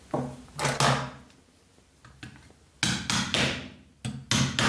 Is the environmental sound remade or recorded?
recorded